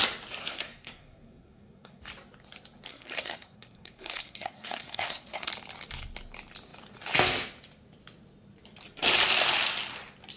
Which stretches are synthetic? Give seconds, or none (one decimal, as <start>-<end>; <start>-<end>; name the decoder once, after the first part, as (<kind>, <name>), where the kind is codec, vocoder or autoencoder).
0.4-2.0 (codec, SNAC); 2.9-5.5